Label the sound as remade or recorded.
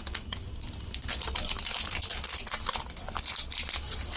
recorded